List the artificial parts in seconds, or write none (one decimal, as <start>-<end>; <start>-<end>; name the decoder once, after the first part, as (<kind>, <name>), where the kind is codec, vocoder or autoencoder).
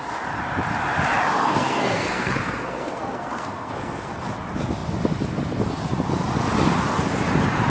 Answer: 1.4-4.2 (codec, SNAC)